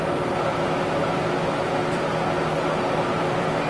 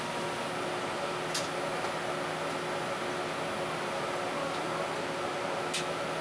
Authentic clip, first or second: second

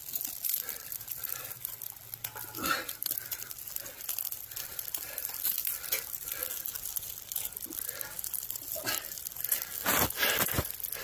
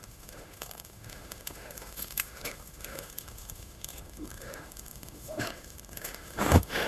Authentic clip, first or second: first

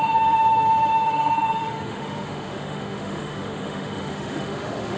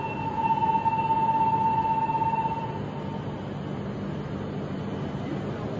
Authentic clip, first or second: second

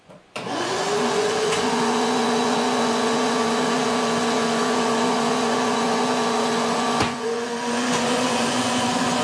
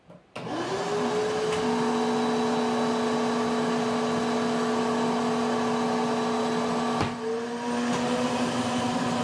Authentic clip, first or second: second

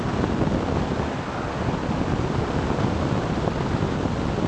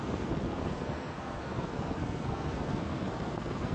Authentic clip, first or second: first